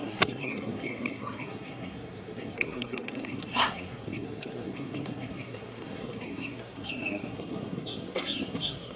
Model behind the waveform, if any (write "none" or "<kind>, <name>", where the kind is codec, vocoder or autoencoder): codec, SNAC